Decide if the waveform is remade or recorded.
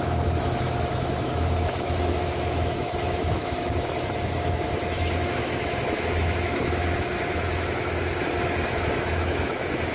remade